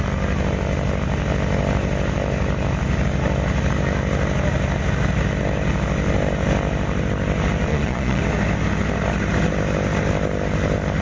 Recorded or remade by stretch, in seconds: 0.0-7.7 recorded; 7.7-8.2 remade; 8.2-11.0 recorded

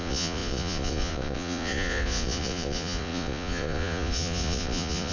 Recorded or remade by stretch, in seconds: 0.0-5.1 remade

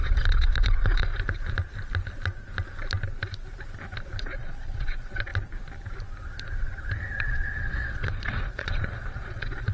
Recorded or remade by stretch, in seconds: 0.0-1.1 remade; 1.1-4.2 recorded; 4.2-5.3 remade; 5.3-7.2 recorded; 7.2-9.7 remade

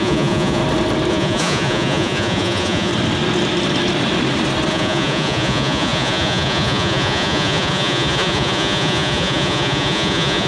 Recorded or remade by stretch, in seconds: 0.0-0.6 remade; 0.6-1.1 recorded; 1.1-2.9 remade; 2.9-4.7 recorded; 4.7-10.5 remade

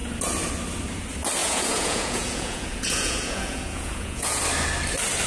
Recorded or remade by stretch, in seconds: 0.0-1.4 recorded; 1.4-4.4 remade; 4.4-5.3 recorded

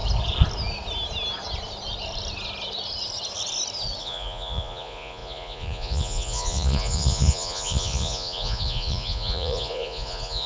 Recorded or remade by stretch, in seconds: 0.0-4.0 recorded; 4.0-10.5 remade

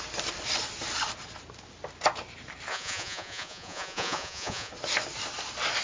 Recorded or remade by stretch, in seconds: 0.0-2.7 recorded; 2.7-4.7 remade; 4.7-5.8 recorded